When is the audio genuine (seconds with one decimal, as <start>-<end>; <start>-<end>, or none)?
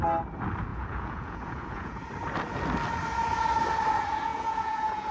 0.0-0.7; 2.0-4.3